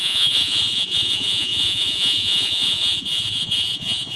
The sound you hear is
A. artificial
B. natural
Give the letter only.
A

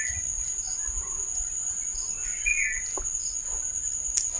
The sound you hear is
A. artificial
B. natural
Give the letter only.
B